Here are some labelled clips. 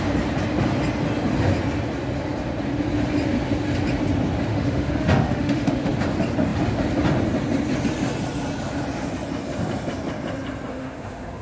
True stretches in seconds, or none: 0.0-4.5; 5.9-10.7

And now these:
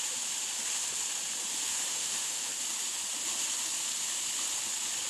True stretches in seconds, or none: 0.0-1.9; 2.5-5.1